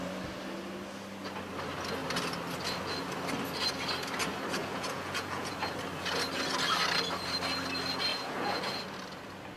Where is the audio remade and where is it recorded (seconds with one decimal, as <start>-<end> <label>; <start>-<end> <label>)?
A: 0.0-4.6 recorded; 4.6-5.5 remade; 5.5-8.1 recorded; 8.1-8.8 remade; 8.8-9.6 recorded